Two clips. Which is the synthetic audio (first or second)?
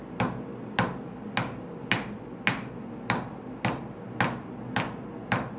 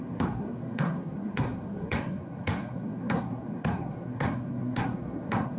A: second